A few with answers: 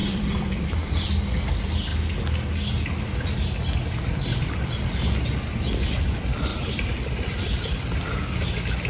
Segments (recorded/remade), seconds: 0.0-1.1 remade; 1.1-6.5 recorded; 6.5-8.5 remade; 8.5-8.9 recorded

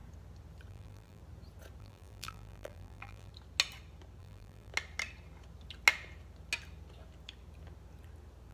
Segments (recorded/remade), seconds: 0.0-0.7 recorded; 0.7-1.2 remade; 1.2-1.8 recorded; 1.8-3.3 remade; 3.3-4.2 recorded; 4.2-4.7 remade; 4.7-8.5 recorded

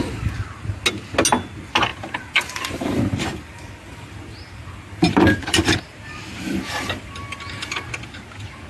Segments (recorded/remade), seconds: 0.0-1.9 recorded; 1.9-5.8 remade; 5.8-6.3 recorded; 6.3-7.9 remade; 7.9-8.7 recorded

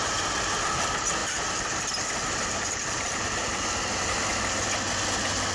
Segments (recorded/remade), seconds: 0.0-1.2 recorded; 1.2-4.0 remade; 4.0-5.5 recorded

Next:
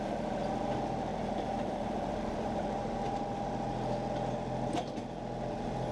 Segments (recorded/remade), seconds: 0.0-1.1 recorded; 1.1-3.5 remade; 3.5-5.9 recorded